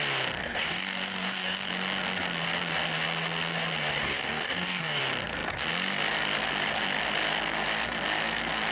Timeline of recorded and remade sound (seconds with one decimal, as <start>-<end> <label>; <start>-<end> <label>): 0.0-0.4 recorded; 0.4-1.7 remade; 1.7-3.9 recorded; 3.9-5.0 remade; 5.0-8.7 recorded